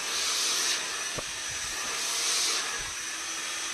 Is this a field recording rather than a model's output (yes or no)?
yes